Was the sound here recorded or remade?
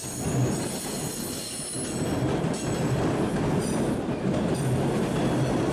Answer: recorded